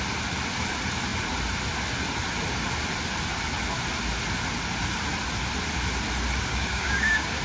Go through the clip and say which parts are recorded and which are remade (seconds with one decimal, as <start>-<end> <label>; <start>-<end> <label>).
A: 0.0-6.5 recorded; 6.5-7.4 remade